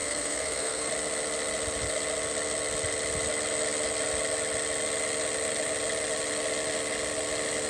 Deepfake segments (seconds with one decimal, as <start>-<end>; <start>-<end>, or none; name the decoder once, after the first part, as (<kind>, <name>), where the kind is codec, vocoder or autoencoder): 0.0-0.9 (codec, SNAC)